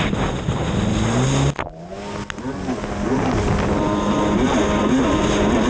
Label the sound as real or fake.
real